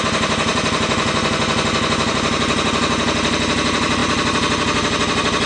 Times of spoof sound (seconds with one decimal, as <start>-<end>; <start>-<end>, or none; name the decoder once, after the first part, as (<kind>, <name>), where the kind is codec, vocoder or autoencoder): 0.0-4.0 (vocoder, BigVGAN v2)